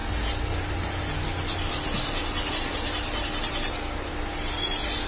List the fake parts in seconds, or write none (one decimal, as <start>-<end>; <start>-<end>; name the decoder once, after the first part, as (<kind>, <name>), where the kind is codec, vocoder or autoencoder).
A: none